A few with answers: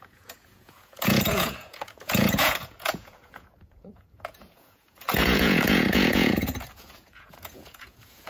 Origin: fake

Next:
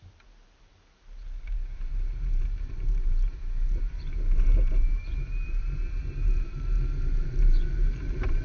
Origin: fake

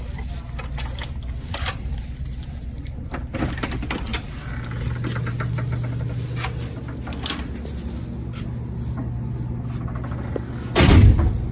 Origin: real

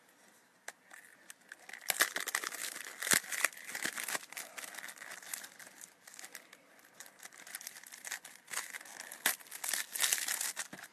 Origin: real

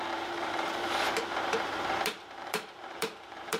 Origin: fake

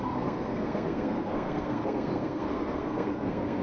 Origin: fake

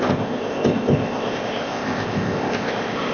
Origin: fake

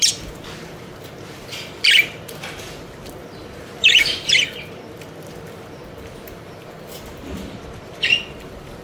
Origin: fake